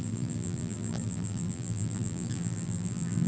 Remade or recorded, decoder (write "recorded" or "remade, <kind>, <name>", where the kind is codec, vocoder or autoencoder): remade, vocoder, BigVGAN v2